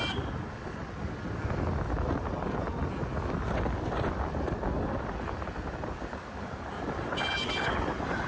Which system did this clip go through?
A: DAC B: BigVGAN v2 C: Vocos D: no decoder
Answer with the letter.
D